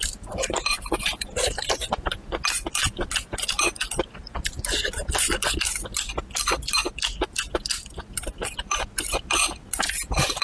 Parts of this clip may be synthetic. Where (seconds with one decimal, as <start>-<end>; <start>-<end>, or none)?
none